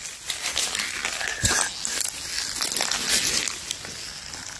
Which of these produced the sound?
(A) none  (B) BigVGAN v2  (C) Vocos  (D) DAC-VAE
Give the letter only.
A